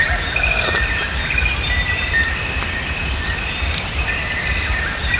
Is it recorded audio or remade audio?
recorded